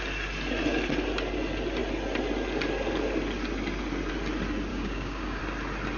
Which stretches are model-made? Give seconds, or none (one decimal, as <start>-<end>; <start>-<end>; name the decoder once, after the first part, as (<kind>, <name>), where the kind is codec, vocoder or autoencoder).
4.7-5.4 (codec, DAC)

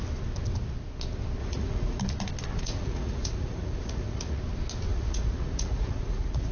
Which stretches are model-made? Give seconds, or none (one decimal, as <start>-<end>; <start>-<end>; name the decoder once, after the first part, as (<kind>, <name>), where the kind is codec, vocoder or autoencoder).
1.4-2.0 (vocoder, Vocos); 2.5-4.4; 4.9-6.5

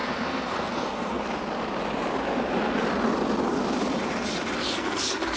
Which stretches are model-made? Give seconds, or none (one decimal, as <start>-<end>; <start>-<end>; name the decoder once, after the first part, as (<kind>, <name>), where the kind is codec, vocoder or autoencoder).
0.0-1.2 (codec, SNAC); 4.6-5.4

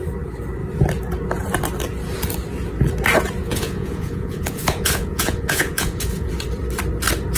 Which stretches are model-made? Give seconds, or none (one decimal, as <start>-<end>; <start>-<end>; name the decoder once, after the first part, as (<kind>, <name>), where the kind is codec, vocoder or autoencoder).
3.4-6.3 (vocoder, Vocos)